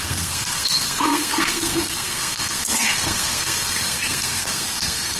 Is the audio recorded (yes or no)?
no